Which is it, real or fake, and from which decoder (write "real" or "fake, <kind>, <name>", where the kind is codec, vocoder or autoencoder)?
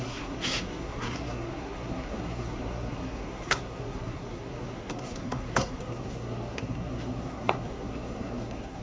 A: fake, codec, SNAC